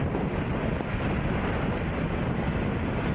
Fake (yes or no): no